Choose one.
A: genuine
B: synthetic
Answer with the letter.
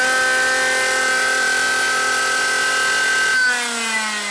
A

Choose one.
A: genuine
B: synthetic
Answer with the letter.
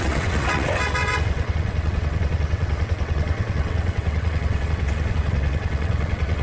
B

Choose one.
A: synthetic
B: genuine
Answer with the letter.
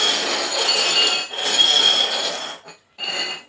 B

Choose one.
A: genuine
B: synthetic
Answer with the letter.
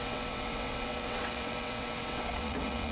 B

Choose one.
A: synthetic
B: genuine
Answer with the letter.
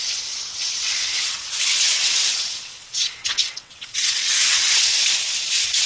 A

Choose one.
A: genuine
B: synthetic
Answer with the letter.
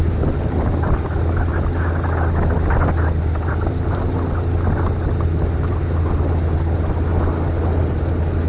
A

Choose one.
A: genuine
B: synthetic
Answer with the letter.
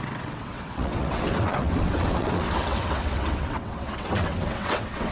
B